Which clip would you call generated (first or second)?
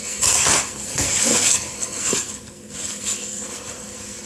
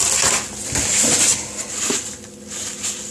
first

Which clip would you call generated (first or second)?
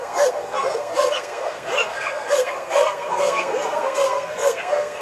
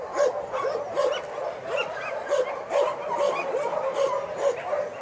first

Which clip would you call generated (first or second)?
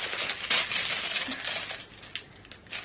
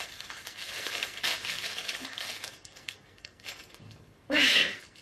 second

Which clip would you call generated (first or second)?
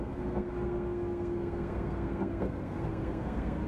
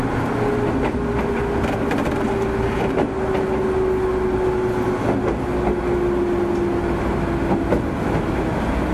first